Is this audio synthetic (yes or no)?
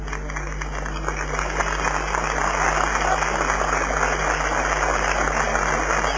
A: no